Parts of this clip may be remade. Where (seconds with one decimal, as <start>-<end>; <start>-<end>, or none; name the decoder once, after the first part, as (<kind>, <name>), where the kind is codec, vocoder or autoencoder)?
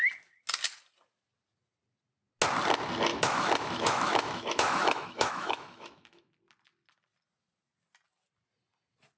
3.1-6.3 (autoencoder, DAC-VAE)